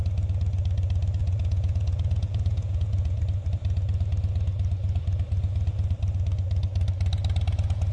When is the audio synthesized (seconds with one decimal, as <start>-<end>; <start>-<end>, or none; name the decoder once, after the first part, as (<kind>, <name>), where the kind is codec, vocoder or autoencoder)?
1.2-3.2 (vocoder, Vocos)